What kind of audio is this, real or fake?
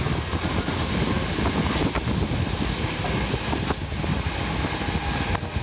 real